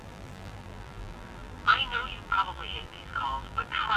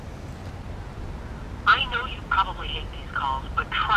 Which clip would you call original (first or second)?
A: second